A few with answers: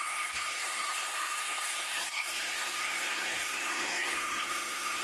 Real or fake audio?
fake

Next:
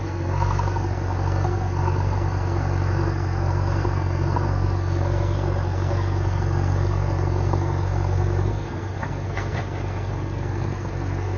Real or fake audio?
fake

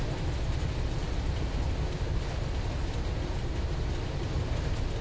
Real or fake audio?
real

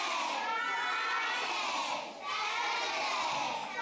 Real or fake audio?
real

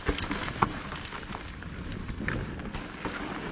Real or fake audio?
real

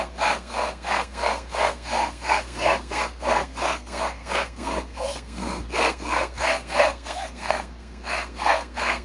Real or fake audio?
fake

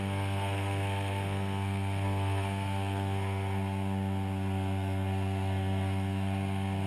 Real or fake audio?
fake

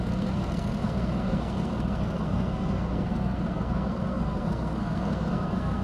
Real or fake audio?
fake